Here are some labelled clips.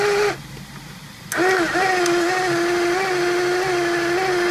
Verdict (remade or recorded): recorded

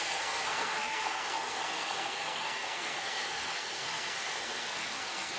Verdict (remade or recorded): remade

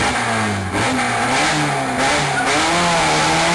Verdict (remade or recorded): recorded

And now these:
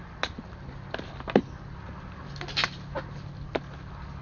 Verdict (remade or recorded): recorded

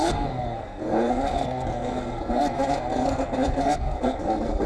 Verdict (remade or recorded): remade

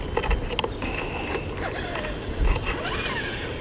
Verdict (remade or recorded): recorded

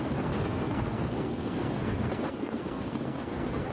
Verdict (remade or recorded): remade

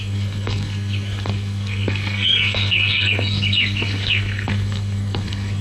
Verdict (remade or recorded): remade